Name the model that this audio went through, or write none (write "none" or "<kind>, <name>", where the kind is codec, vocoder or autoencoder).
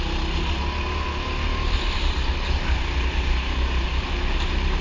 none